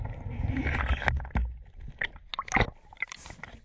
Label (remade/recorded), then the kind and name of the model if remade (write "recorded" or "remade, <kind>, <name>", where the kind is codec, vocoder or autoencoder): recorded